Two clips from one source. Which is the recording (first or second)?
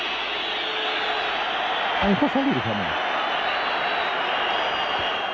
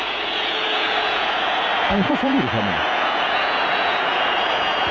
first